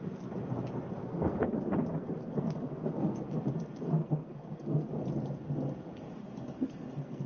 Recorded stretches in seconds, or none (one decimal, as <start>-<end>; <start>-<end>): 0.0-1.0; 1.5-2.0; 3.4-4.0; 4.9-6.2